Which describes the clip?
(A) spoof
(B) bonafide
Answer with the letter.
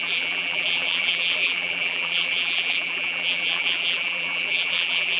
A